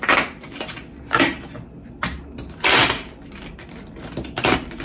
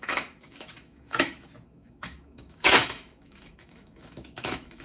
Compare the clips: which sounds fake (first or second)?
second